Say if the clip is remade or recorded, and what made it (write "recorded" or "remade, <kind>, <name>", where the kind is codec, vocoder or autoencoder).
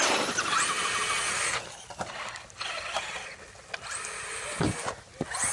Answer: recorded